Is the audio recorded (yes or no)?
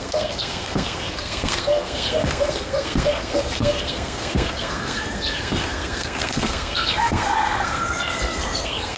no